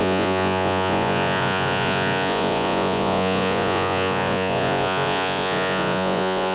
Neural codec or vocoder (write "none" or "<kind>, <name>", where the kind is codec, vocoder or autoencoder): vocoder, Vocos